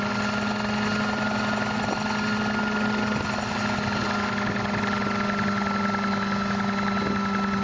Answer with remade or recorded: recorded